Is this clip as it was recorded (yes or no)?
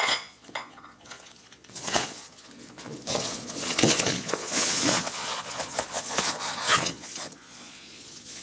no